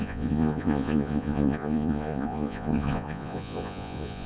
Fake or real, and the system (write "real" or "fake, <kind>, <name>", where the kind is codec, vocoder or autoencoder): fake, vocoder, Vocos